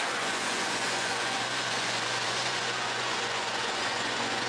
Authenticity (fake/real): fake